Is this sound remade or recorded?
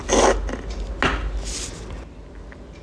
recorded